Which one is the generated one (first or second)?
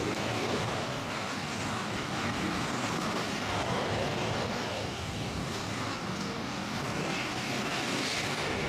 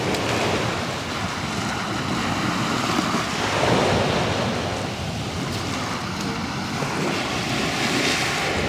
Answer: first